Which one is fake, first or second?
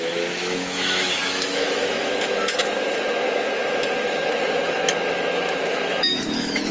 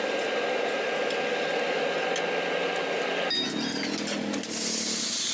first